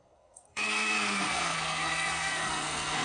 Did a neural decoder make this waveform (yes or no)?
yes